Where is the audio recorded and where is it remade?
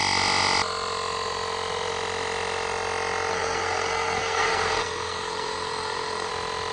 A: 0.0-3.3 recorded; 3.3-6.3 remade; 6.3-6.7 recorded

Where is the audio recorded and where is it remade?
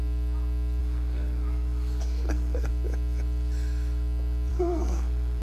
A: 0.0-0.8 recorded; 0.8-2.7 remade; 2.7-4.5 recorded; 4.5-5.4 remade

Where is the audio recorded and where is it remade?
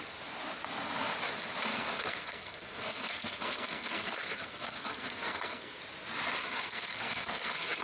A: 0.0-1.7 recorded; 1.7-5.8 remade; 5.8-6.4 recorded; 6.4-7.8 remade